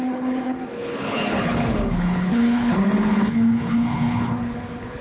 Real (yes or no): no